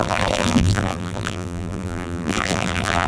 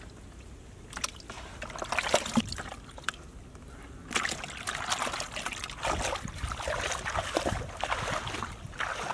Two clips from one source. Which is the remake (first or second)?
first